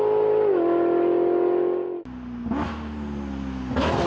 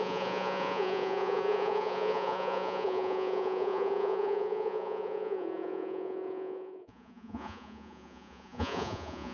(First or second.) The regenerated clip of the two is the second